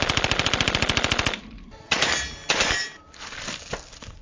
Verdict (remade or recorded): remade